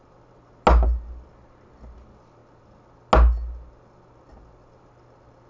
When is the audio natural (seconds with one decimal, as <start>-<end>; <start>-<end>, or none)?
0.0-5.5